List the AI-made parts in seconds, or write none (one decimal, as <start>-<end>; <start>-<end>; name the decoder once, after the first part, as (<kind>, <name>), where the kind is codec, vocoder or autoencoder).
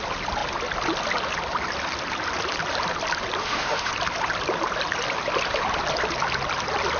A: 3.4-3.9 (autoencoder, DAC-VAE)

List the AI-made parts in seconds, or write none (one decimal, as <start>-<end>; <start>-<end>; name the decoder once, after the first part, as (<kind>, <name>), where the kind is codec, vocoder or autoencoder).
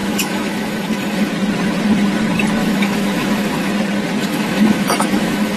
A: 0.0-1.3 (autoencoder, DAC-VAE); 2.6-3.7; 4.2-5.6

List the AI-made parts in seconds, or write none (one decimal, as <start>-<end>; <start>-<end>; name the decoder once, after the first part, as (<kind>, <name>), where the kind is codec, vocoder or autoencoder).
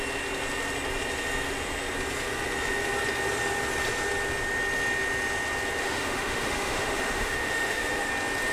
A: 5.8-8.1 (autoencoder, DAC-VAE)